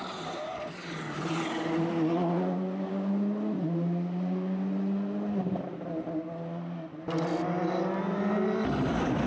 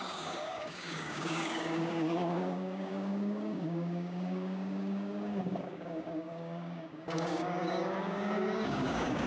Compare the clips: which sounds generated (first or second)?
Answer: second